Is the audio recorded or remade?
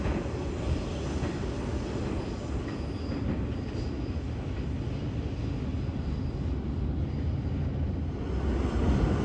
recorded